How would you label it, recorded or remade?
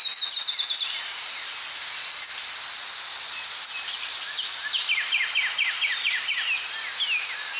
recorded